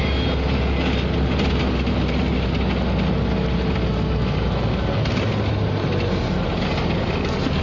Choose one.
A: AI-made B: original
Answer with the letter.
B